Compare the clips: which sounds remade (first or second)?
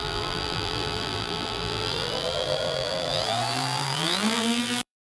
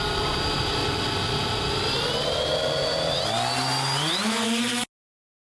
first